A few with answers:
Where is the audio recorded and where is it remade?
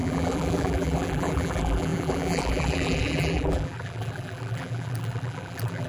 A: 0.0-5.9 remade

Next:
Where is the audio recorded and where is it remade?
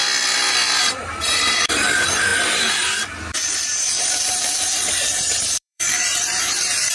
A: 0.0-0.8 recorded; 0.8-6.9 remade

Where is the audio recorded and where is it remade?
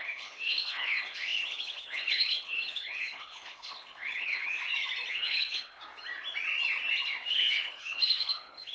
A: 0.0-4.6 remade; 4.6-5.1 recorded; 5.1-5.8 remade; 5.8-7.3 recorded; 7.3-8.7 remade